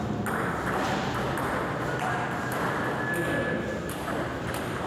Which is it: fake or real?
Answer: real